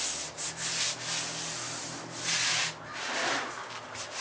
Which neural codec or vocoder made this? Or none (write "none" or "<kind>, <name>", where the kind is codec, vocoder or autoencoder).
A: none